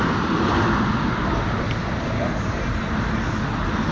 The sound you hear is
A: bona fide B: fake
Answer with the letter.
A